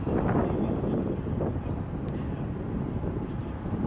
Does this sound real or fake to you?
real